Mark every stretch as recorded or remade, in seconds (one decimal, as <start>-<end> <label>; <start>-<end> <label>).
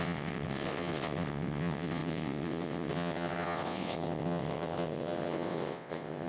0.0-6.3 remade